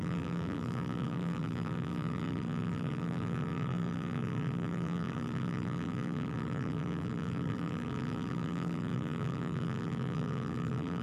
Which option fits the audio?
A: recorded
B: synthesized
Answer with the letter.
B